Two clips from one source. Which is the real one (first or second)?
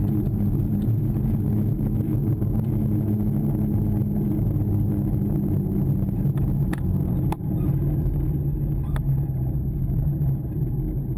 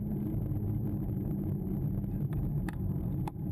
first